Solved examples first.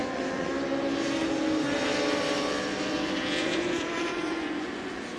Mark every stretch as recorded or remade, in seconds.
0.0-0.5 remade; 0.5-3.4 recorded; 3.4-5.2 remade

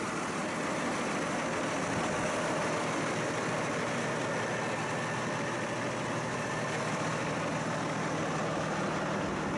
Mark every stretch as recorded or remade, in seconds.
0.0-9.6 recorded

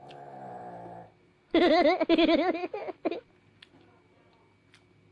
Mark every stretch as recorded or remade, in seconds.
0.0-5.1 recorded

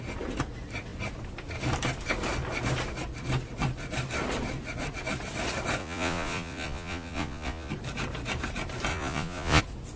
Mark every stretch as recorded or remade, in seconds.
0.0-5.8 recorded; 5.8-7.7 remade; 7.7-8.9 recorded; 8.9-9.6 remade; 9.6-10.0 recorded